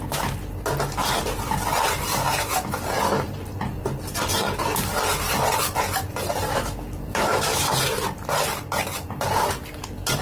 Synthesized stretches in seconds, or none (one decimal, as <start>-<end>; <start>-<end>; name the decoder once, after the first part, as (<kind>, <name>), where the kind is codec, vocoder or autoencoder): 6.5-7.7 (autoencoder, DAC-VAE)